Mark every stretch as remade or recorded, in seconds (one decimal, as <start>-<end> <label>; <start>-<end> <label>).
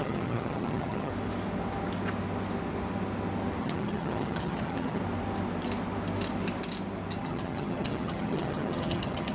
0.0-1.1 remade; 1.1-3.6 recorded; 3.6-5.0 remade; 5.0-7.2 recorded; 7.2-9.3 remade